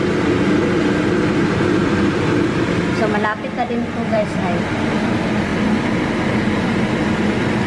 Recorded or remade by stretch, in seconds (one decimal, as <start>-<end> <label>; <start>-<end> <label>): 0.0-4.0 recorded; 4.0-4.6 remade; 4.6-7.7 recorded